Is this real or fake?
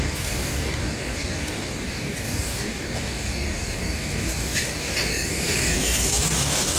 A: fake